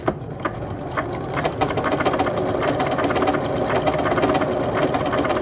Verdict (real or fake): real